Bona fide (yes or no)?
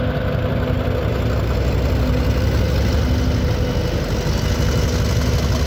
yes